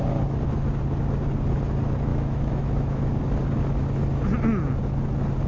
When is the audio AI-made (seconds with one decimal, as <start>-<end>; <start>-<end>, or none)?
2.1-3.2